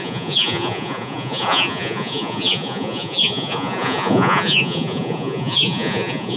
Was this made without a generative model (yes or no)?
no